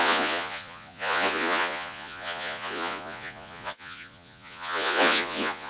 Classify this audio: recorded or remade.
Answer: remade